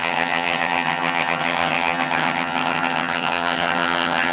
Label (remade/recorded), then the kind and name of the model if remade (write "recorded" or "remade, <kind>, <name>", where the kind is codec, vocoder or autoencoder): remade, vocoder, HiFi-GAN